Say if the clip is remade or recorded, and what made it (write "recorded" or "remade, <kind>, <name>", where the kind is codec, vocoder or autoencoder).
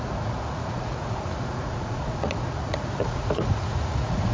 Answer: remade, vocoder, Vocos